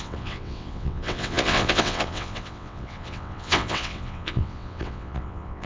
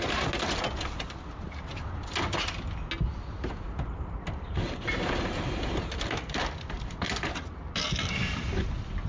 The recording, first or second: second